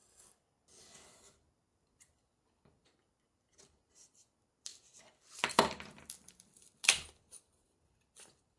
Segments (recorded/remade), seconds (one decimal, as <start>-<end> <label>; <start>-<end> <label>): 0.0-8.6 recorded